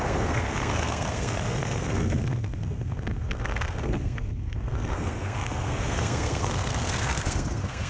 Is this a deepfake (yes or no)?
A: yes